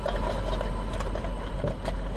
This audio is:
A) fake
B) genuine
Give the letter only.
B